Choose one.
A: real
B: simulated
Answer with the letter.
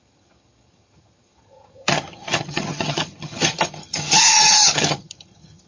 B